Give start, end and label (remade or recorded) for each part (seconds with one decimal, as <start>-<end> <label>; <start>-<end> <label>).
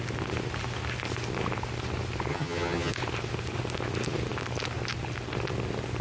0.0-2.3 recorded; 2.3-2.9 remade; 2.9-6.0 recorded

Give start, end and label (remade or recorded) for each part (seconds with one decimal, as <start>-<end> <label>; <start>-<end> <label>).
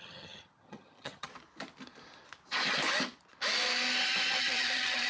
0.0-1.3 remade; 1.3-4.4 recorded; 4.4-5.1 remade